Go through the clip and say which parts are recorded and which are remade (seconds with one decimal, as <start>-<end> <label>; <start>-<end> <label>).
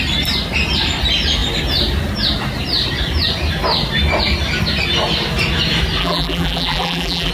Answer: 0.0-6.0 recorded; 6.0-7.3 remade